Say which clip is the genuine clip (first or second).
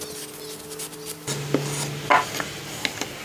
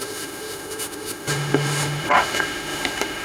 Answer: first